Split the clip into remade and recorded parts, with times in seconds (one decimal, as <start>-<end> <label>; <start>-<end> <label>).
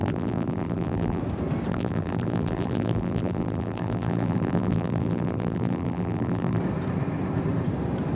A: 0.0-1.2 remade; 1.2-1.7 recorded; 1.7-6.6 remade; 6.6-8.1 recorded